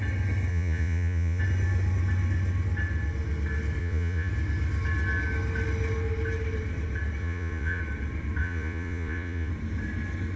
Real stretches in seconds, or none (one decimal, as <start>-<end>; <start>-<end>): 0.0-0.5; 1.4-3.8; 4.3-7.2; 7.8-8.4; 9.5-10.4